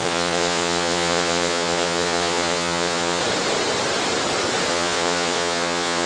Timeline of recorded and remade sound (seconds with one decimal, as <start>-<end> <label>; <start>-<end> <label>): 0.0-3.2 remade; 3.2-4.7 recorded; 4.7-6.1 remade